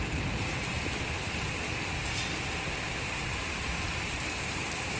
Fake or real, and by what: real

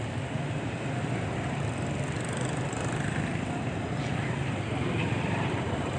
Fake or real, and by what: real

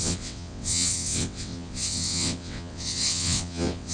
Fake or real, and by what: fake, vocoder, WaveNeXt